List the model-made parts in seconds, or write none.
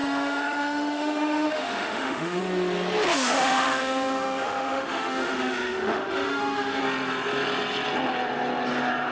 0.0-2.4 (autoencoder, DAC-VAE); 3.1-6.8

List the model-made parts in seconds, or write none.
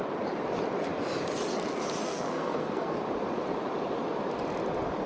2.0-3.0 (codec, SNAC)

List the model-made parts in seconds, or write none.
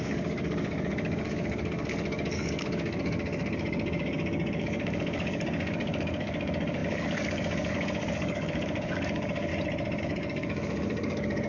0.0-9.5 (codec, DAC); 10.0-11.5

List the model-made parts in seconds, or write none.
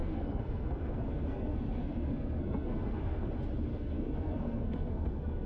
0.0-3.3 (codec, SNAC); 3.7-5.5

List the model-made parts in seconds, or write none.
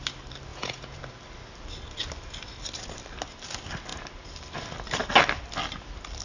0.5-1.0 (vocoder, Vocos)